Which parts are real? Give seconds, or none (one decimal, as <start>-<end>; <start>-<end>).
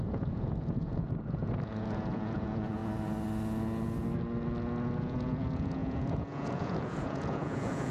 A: 2.8-5.0